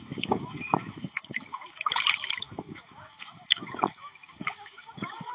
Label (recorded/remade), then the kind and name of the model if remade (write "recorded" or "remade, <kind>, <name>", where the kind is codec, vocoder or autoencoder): remade, autoencoder, DAC-VAE